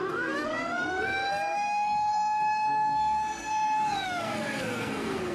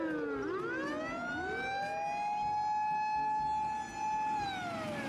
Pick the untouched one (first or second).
second